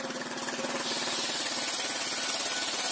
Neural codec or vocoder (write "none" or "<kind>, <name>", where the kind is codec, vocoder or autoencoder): none